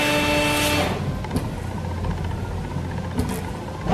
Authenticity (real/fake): real